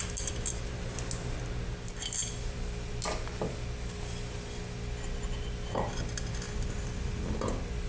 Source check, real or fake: real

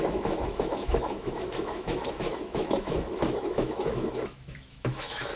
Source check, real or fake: fake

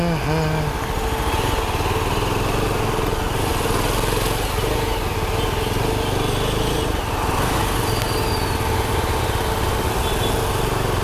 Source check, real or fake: real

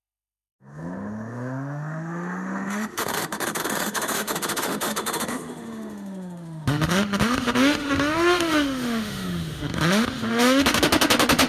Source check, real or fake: fake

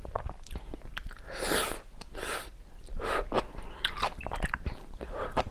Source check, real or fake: real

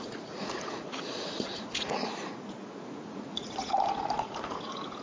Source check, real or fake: fake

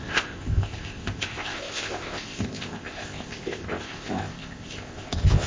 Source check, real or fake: fake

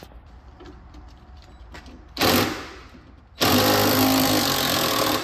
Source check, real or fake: real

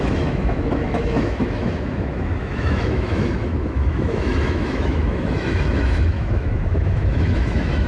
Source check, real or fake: fake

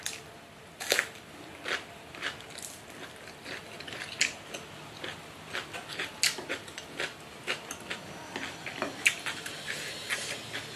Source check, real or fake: real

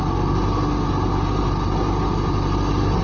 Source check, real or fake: real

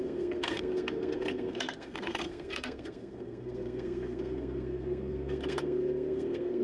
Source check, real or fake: fake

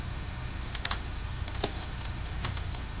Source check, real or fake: fake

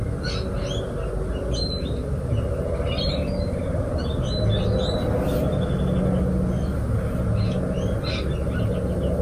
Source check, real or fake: real